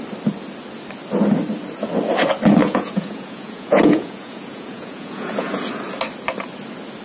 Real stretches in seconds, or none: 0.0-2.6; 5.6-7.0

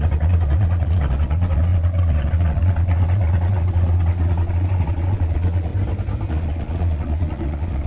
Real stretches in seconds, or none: 5.7-6.3

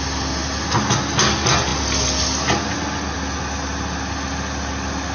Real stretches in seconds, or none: 0.0-5.1

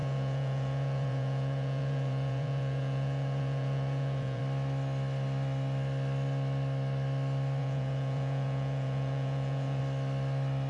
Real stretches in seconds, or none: 4.4-7.6; 9.8-10.7

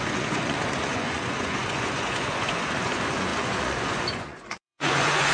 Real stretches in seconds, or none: none

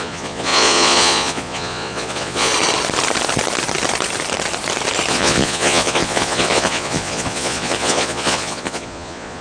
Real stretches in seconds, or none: 2.5-5.1

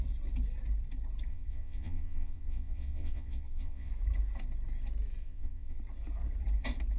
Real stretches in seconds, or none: 0.0-1.3; 3.9-5.2; 5.8-7.0